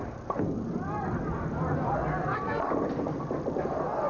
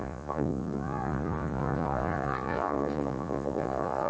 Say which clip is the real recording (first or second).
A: first